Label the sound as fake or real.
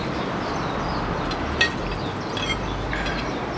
real